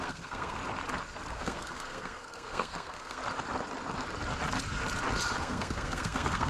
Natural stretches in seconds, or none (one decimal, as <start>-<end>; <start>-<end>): 0.6-1.3; 3.2-5.4